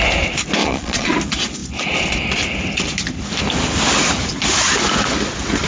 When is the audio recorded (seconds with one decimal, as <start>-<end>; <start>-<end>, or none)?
0.0-0.6; 1.1-5.7